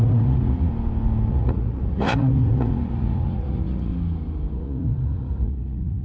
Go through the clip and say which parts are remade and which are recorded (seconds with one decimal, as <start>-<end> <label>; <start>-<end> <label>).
0.0-0.7 remade; 0.7-1.3 recorded; 1.3-3.9 remade; 3.9-4.5 recorded; 4.5-6.0 remade